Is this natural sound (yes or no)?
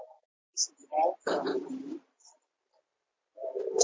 yes